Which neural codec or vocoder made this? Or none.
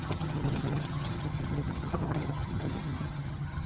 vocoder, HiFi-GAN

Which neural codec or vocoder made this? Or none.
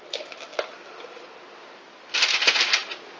none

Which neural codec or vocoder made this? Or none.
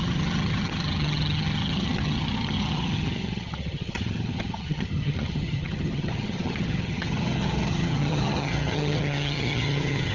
vocoder, HiFi-GAN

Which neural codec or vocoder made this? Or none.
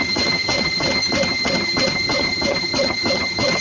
vocoder, HiFi-GAN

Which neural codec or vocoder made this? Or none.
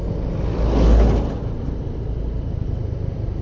none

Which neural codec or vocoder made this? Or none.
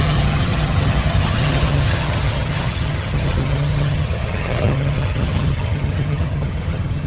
vocoder, HiFi-GAN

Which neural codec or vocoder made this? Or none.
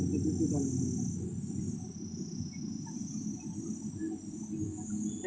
none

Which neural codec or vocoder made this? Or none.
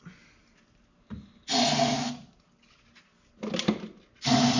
none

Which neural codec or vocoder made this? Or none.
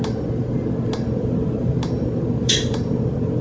none